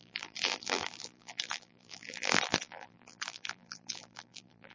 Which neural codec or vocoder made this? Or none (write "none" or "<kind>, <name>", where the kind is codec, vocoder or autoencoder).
vocoder, BigVGAN v2